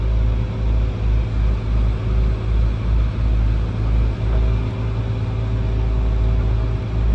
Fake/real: real